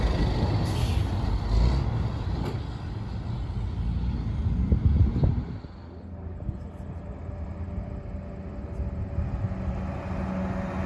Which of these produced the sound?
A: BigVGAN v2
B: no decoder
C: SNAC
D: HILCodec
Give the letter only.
B